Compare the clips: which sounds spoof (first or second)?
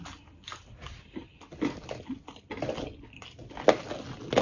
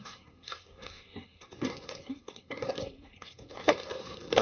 second